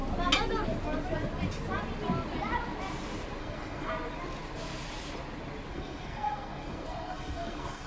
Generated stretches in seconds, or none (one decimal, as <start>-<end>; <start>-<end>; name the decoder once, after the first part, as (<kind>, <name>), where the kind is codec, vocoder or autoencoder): 3.4-3.9 (codec, SNAC); 5.7-7.9